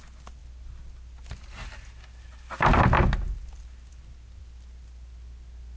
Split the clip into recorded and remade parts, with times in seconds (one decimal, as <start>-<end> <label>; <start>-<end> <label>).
0.0-5.8 recorded